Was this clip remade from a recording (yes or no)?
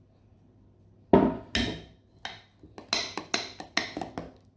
no